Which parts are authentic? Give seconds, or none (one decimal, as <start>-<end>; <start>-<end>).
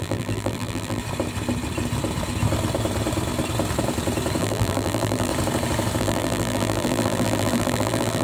1.0-4.4; 5.3-6.0